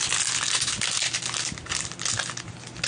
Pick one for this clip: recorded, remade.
recorded